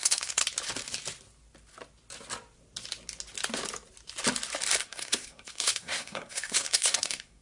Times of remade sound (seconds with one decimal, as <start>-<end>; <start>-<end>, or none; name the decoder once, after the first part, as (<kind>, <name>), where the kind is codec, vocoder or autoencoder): 0.0-0.4 (codec, SNAC); 4.8-7.4